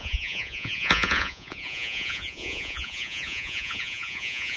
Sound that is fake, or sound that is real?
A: fake